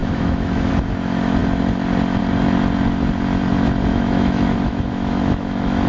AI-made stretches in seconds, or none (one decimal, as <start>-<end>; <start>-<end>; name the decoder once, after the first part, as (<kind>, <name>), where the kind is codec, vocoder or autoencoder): 0.0-0.7 (autoencoder, DAC-VAE); 3.9-5.9